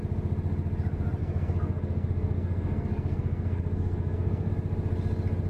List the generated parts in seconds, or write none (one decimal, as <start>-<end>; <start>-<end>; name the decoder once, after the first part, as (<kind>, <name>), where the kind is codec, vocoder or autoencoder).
1.2-4.5 (codec, SNAC)